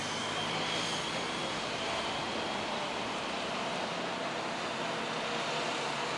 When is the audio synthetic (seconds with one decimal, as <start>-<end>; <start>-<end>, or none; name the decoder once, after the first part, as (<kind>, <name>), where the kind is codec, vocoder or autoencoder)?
1.4-4.4 (vocoder, BigVGAN v2)